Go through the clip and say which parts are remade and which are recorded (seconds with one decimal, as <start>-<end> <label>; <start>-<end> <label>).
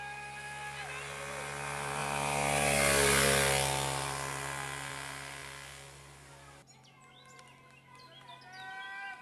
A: 0.0-9.2 recorded